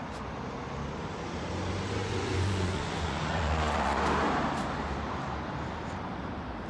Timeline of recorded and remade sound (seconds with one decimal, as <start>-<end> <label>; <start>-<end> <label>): 0.0-2.0 recorded; 2.0-4.0 remade; 4.0-6.7 recorded